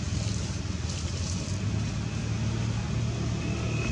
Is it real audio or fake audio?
real